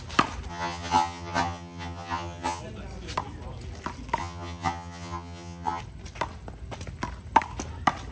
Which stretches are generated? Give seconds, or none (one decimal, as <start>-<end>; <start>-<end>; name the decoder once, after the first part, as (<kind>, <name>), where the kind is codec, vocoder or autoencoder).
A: 0.5-2.6 (vocoder, HiFi-GAN); 4.2-5.8